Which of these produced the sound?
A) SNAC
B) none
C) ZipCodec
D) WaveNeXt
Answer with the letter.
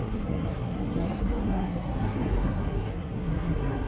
A